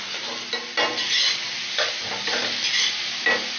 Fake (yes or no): no